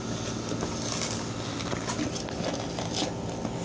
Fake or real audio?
real